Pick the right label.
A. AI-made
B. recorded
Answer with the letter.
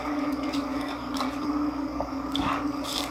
A